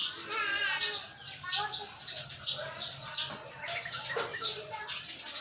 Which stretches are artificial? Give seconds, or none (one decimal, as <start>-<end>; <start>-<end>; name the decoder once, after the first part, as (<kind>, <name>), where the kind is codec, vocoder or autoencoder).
none